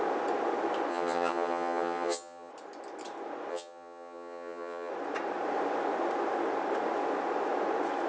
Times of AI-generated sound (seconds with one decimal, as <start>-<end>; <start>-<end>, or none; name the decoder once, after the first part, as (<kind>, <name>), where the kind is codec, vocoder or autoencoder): 0.9-2.5 (vocoder, HiFi-GAN); 3.5-4.9